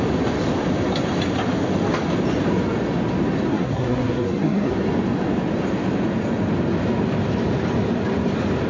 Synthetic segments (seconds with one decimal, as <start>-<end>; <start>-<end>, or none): 3.5-4.7